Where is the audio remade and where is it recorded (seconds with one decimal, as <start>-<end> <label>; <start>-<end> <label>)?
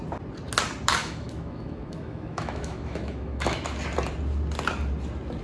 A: 0.0-1.0 recorded; 1.0-3.7 remade; 3.7-5.4 recorded